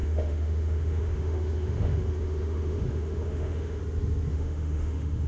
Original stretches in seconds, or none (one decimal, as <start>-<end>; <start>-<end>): 3.8-4.3